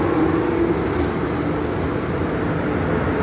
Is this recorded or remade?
recorded